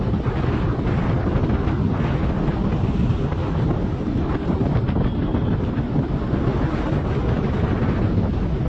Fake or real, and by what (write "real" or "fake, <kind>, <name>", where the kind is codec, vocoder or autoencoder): real